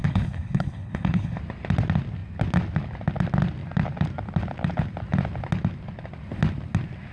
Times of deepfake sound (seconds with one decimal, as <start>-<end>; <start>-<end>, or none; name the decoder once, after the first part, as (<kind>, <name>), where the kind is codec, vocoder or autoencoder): 0.0-1.4 (codec, HILCodec)